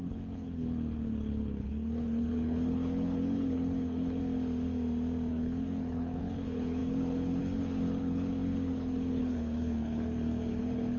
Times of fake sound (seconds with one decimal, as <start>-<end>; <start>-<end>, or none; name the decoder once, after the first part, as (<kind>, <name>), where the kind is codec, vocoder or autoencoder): 0.0-4.2 (codec, HILCodec); 5.3-11.0